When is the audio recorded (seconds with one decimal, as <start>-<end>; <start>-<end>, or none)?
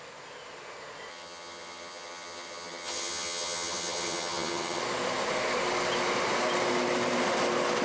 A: 0.0-1.1; 4.8-7.8